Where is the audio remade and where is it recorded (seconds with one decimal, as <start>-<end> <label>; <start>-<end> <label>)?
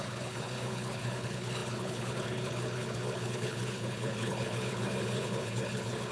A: 0.0-6.1 remade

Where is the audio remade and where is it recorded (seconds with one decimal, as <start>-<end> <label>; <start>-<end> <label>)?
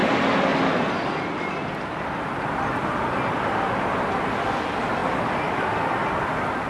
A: 0.0-6.7 recorded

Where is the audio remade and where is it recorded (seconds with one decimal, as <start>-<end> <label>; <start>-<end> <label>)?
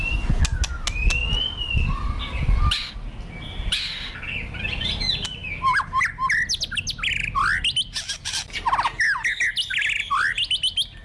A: 0.0-11.0 recorded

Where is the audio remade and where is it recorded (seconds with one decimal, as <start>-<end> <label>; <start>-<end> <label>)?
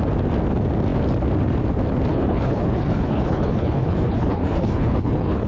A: 0.0-2.1 recorded; 2.1-5.5 remade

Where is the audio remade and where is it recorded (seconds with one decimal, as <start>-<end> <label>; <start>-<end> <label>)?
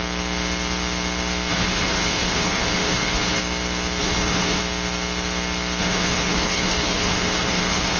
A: 0.0-1.5 recorded; 1.5-3.4 remade; 3.4-4.0 recorded; 4.0-4.6 remade; 4.6-5.8 recorded; 5.8-8.0 remade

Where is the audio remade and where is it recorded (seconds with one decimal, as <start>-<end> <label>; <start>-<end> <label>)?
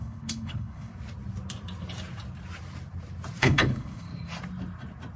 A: 0.0-0.9 remade; 0.9-3.4 recorded; 3.4-4.1 remade; 4.1-5.2 recorded